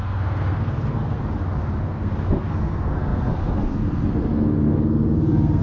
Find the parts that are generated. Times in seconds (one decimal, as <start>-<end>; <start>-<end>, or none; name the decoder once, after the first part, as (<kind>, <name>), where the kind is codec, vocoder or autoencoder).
0.0-1.2 (codec, SNAC); 1.8-5.6